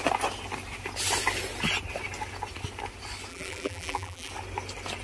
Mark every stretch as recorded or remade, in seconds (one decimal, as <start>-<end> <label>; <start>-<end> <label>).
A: 0.0-3.3 recorded; 3.3-4.3 remade; 4.3-5.0 recorded